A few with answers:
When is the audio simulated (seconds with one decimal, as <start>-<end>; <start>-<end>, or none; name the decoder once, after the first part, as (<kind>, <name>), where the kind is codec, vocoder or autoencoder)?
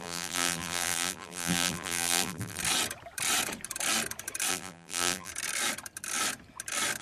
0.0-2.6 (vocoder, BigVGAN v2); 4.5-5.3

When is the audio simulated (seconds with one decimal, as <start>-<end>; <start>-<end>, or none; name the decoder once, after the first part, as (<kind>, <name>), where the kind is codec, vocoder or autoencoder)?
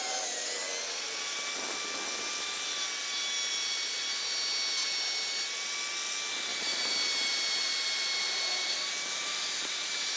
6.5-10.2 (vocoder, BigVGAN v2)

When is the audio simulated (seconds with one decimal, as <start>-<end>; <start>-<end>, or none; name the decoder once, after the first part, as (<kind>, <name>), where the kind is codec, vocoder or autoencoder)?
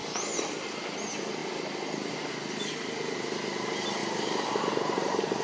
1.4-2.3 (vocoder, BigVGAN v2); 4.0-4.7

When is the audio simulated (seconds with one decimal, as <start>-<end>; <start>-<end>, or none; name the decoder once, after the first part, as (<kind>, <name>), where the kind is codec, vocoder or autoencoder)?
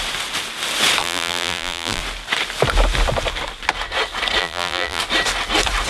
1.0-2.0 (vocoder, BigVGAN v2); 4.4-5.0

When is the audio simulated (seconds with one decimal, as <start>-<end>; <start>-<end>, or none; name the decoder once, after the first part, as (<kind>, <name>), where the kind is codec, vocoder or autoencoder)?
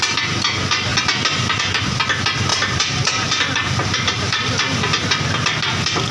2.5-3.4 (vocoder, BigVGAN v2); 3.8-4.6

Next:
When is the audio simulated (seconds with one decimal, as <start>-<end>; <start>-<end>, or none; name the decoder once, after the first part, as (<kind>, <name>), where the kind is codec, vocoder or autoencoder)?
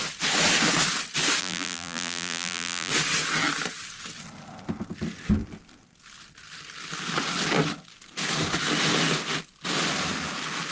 1.4-2.9 (vocoder, BigVGAN v2)